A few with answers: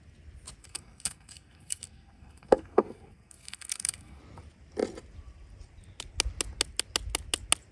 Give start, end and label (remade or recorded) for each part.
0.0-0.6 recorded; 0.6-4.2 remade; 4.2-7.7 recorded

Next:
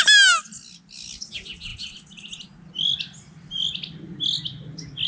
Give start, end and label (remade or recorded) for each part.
0.0-5.1 recorded

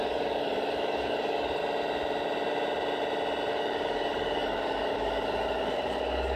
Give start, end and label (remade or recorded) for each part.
0.0-1.6 remade; 1.6-3.5 recorded; 3.5-6.4 remade

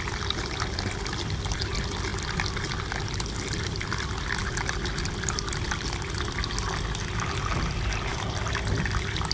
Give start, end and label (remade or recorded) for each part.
0.0-9.3 recorded

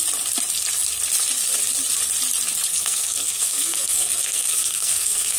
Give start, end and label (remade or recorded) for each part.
0.0-2.7 recorded; 2.7-5.4 remade

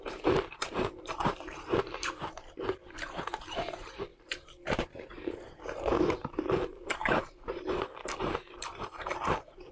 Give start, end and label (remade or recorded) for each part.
0.0-9.7 remade

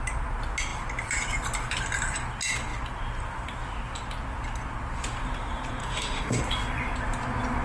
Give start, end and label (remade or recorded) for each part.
0.0-5.8 recorded; 5.8-6.4 remade; 6.4-7.6 recorded

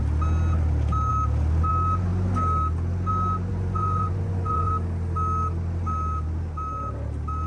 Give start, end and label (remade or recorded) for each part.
0.0-3.5 recorded; 3.5-4.7 remade; 4.7-7.5 recorded